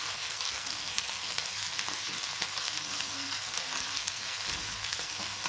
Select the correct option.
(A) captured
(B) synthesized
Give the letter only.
B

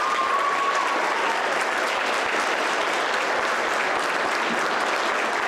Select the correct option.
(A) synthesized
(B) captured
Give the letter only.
B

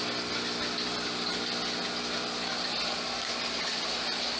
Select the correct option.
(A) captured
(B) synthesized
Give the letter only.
A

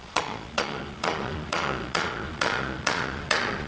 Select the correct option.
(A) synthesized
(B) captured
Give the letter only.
A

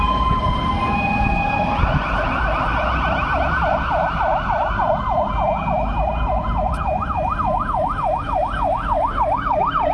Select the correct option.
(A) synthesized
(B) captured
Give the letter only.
B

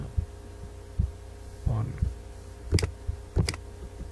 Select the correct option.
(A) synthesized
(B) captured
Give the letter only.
B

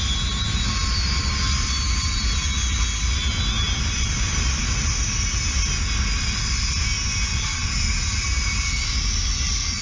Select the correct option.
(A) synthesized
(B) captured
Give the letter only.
B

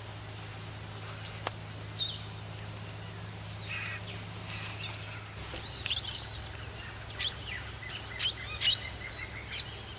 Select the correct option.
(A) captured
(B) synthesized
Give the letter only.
A